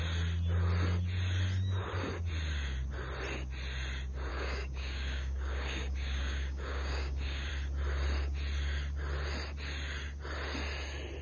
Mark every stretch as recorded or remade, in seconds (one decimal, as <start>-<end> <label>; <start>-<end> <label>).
0.0-4.3 recorded; 4.3-7.5 remade; 7.5-11.2 recorded